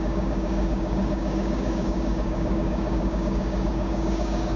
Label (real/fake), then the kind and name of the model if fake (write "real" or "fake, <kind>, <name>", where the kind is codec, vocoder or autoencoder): fake, codec, DAC